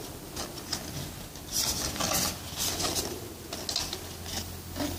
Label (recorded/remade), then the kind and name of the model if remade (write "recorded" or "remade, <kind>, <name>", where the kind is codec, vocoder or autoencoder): recorded